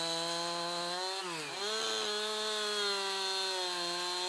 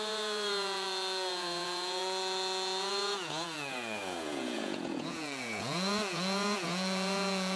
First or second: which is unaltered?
first